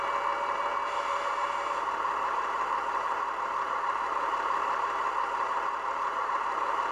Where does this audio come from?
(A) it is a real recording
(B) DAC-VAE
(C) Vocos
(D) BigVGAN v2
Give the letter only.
D